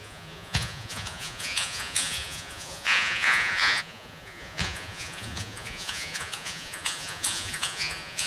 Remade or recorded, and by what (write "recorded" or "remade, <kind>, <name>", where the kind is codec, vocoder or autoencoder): remade, vocoder, Vocos